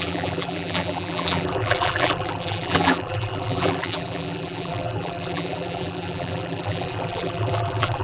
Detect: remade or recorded remade